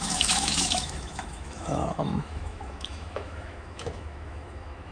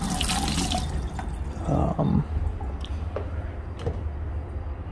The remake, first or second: first